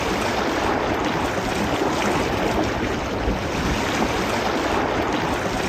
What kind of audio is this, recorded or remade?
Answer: recorded